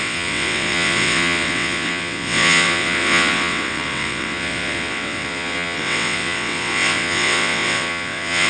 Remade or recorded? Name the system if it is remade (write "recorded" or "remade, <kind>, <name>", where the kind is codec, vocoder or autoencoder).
remade, vocoder, WaveNeXt